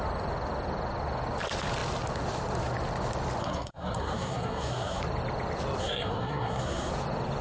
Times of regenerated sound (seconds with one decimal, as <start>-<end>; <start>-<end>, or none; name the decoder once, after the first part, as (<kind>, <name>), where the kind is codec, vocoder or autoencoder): 3.4-5.0 (codec, SNAC); 5.8-6.9